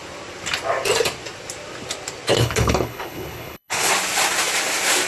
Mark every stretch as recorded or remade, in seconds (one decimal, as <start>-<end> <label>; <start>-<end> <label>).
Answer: 0.0-2.3 recorded; 2.3-3.9 remade; 3.9-5.1 recorded